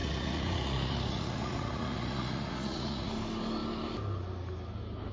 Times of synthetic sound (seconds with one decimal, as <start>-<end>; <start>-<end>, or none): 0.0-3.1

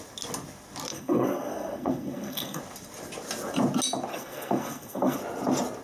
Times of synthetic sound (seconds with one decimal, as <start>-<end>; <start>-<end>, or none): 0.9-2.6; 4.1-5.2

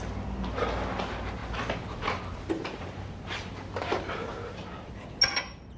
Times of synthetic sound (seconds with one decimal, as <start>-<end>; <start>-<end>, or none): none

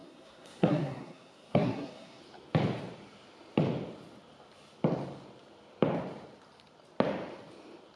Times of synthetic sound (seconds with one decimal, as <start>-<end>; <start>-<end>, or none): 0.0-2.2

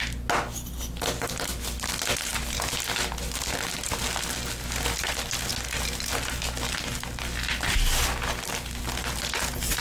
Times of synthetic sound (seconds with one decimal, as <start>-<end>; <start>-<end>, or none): none